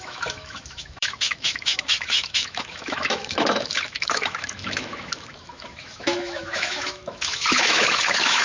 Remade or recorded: remade